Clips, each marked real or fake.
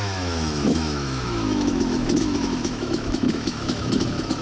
fake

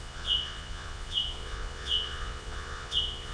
fake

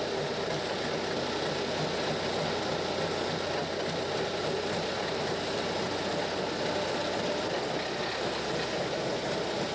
real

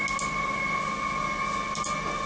real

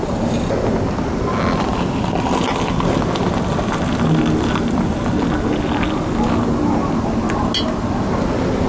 real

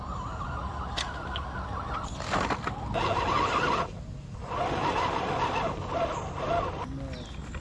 real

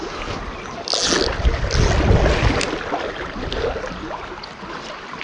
real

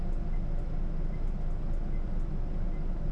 real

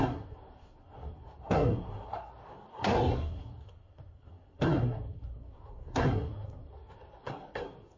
fake